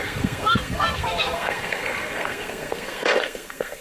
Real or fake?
fake